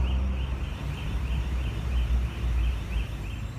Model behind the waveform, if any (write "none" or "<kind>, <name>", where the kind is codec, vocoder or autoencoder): none